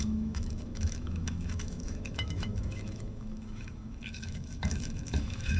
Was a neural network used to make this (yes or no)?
yes